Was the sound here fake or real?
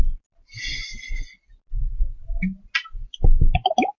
real